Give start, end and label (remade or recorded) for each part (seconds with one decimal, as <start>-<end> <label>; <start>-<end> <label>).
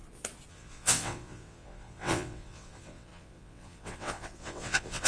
0.0-0.5 recorded; 0.5-5.1 remade